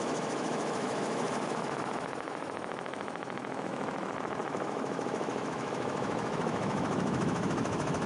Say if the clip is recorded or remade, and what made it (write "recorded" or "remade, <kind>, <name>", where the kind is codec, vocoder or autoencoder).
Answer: remade, autoencoder, DAC-VAE